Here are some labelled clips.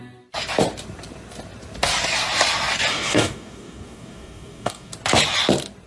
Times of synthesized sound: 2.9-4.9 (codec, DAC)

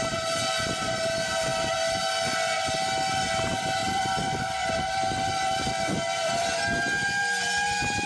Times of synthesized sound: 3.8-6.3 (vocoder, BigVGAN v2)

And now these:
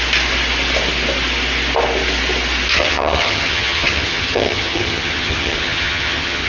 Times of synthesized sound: 2.7-6.5 (vocoder, HiFi-GAN)

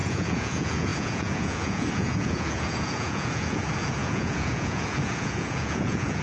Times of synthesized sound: 0.0-6.2 (vocoder, Vocos)

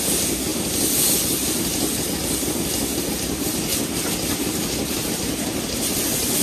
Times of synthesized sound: none

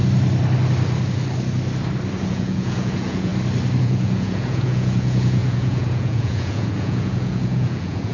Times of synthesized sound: 2.3-3.3 (vocoder, Vocos); 3.8-8.1

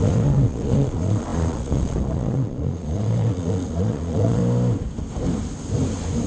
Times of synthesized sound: 0.0-4.4 (vocoder, Vocos)

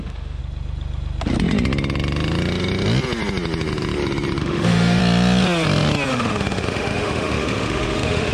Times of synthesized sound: 0.0-0.4 (autoencoder, DAC-VAE); 4.4-5.0; 6.1-8.3